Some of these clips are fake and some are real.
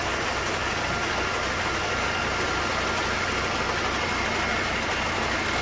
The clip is real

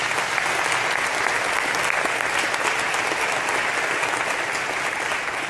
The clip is real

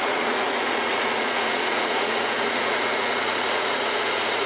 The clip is fake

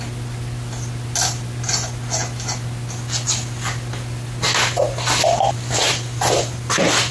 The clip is real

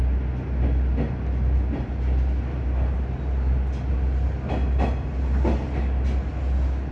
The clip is real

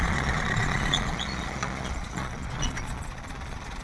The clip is fake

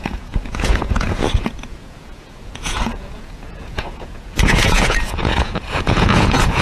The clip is fake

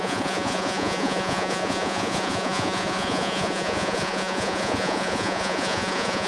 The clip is fake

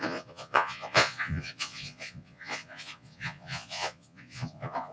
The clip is fake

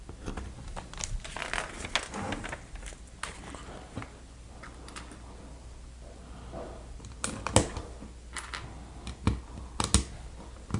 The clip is real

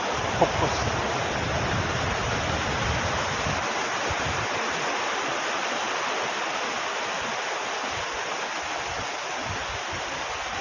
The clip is real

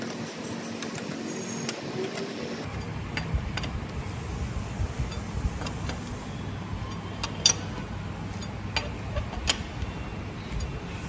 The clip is real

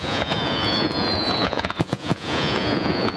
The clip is fake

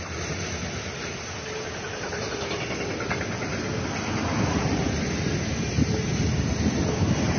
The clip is real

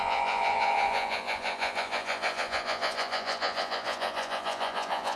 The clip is fake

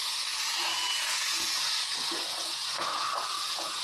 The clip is fake